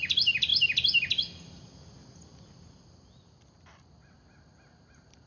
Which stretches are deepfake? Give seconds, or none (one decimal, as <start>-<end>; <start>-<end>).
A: none